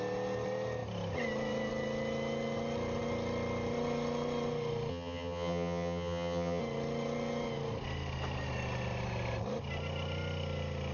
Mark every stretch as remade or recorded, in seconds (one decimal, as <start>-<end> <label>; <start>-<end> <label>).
0.0-4.9 recorded; 4.9-6.6 remade; 6.6-10.9 recorded